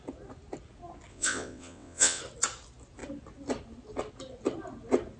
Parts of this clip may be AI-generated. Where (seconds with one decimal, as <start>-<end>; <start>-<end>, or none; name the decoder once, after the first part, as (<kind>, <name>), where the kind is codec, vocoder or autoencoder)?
1.1-2.2 (vocoder, WaveNeXt)